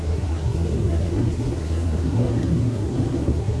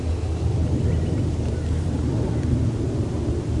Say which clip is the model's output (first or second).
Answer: first